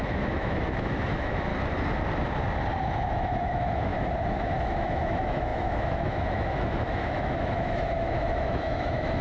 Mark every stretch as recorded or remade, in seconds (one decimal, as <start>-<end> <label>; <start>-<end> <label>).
0.0-1.5 remade; 1.5-3.1 recorded; 3.1-9.2 remade